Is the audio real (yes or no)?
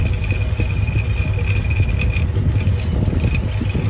yes